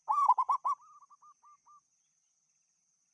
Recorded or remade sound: recorded